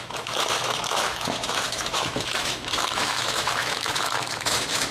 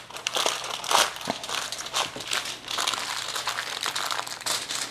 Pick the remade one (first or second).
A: first